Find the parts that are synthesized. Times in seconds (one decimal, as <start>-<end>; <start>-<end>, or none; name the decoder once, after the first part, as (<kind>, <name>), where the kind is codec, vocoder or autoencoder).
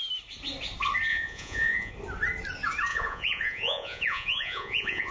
1.1-1.9 (vocoder, Vocos); 2.9-5.1